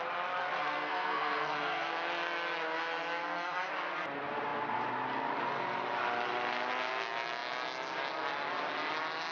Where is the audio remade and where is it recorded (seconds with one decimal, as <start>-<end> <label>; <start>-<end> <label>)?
0.0-0.6 recorded; 0.6-1.9 remade; 1.9-3.2 recorded; 3.2-3.7 remade; 3.7-9.3 recorded

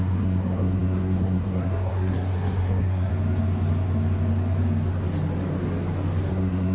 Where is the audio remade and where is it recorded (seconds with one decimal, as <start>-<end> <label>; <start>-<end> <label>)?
0.0-3.1 remade; 3.1-6.3 recorded; 6.3-6.7 remade

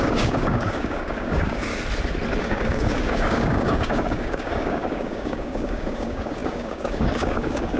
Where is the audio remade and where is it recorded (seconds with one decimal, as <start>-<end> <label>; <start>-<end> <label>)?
0.0-1.7 remade; 1.7-2.4 recorded; 2.4-7.8 remade

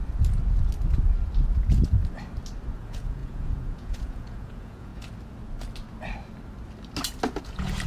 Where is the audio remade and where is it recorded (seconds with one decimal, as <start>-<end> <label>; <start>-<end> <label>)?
0.0-1.6 recorded; 1.6-2.0 remade; 2.0-2.8 recorded; 2.8-4.9 remade; 4.9-7.4 recorded; 7.4-7.9 remade